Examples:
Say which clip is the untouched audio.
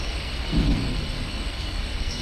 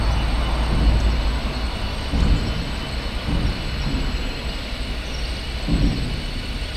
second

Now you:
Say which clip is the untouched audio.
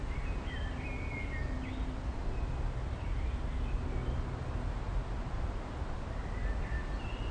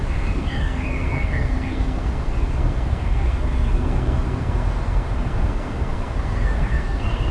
first